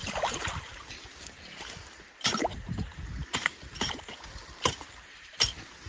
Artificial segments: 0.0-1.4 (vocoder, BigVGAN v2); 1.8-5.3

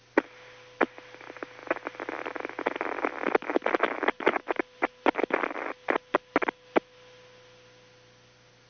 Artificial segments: none

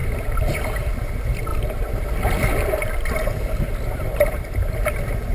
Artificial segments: 1.5-4.7 (vocoder, BigVGAN v2)

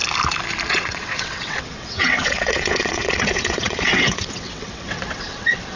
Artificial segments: 0.7-5.8 (vocoder, WaveNeXt)

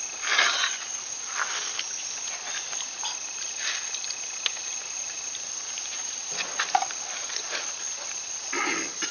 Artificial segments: 4.6-8.2 (vocoder, BigVGAN v2)

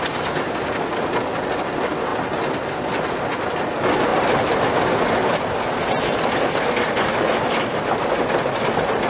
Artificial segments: none